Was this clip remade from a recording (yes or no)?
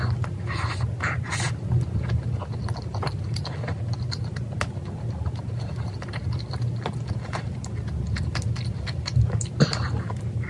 no